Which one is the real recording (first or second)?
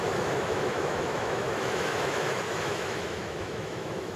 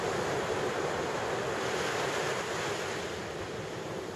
second